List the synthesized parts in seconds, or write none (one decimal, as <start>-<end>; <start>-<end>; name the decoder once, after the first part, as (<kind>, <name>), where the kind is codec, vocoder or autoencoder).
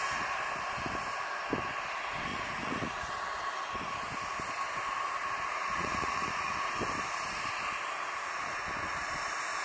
2.3-3.1 (vocoder, Vocos); 5.2-6.7